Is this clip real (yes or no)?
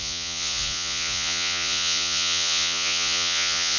no